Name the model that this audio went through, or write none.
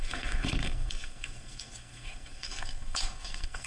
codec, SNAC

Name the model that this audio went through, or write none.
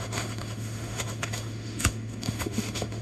autoencoder, DAC-VAE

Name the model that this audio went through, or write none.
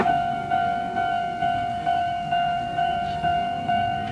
codec, SNAC